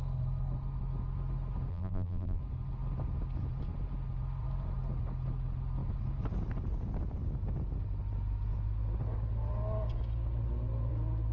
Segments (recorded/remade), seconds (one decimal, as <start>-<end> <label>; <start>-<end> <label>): 0.0-1.7 recorded; 1.7-2.4 remade; 2.4-11.3 recorded